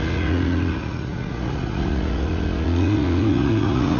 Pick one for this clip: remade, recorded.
remade